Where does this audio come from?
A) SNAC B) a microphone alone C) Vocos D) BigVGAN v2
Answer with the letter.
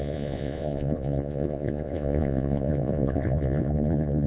C